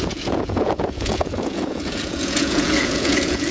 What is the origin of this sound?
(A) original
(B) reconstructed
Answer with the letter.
B